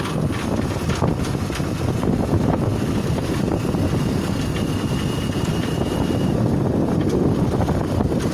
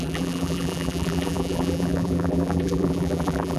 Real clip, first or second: first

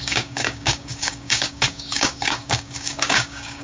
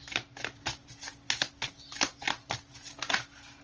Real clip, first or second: second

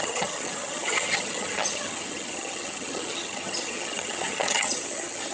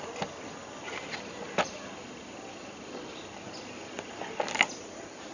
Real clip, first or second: second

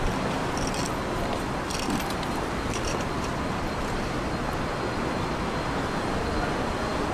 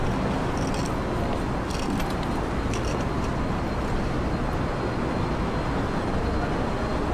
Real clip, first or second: second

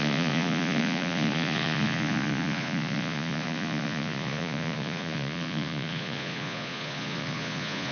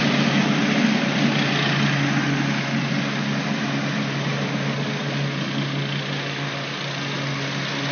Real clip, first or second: second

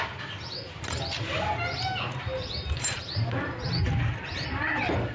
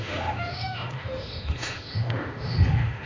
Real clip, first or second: first